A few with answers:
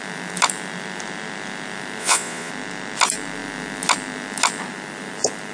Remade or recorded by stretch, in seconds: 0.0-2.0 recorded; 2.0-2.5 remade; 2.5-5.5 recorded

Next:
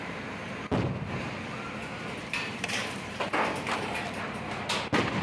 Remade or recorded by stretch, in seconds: 0.0-1.8 recorded; 1.8-4.4 remade; 4.4-5.2 recorded

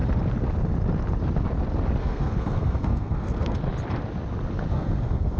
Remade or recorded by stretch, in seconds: 0.0-2.0 recorded; 2.0-3.6 remade; 3.6-4.7 recorded; 4.7-5.4 remade

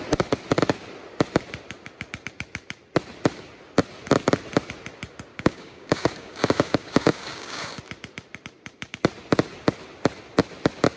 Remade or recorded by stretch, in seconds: 0.0-5.3 recorded; 5.3-7.8 remade; 7.8-11.0 recorded

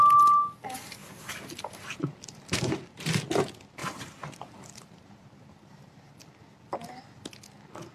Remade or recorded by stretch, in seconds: 0.0-1.0 recorded; 1.0-3.2 remade; 3.2-3.8 recorded; 3.8-6.1 remade; 6.1-7.9 recorded